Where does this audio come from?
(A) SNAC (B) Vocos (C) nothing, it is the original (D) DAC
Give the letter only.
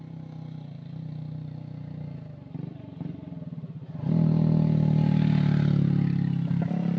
C